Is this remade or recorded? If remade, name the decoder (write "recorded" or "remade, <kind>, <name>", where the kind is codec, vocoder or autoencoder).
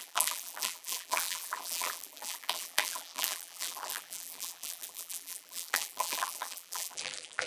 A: remade, vocoder, BigVGAN v2